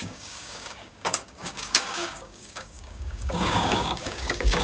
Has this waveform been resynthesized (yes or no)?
yes